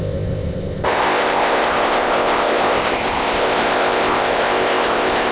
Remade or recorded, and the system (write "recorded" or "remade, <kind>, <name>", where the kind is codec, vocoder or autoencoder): remade, codec, ZipCodec